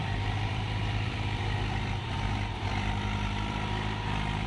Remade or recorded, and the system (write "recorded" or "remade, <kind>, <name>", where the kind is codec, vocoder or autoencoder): remade, vocoder, BigVGAN v2